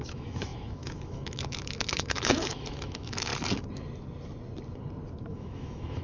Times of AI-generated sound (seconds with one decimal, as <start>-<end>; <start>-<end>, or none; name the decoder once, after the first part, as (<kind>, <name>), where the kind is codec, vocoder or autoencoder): 0.0-3.3 (autoencoder, DAC-VAE); 5.3-6.0